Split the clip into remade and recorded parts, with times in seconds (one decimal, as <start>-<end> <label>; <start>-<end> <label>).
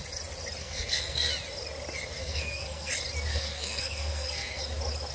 0.0-0.6 recorded; 0.6-1.3 remade; 1.3-2.2 recorded; 2.2-2.9 remade; 2.9-3.3 recorded; 3.3-4.6 remade; 4.6-5.1 recorded